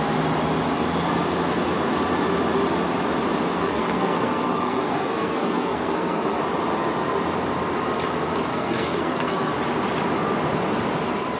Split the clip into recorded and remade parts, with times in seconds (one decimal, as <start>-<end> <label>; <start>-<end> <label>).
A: 0.0-3.6 recorded; 3.6-6.4 remade; 6.4-8.5 recorded; 8.5-9.5 remade; 9.5-11.4 recorded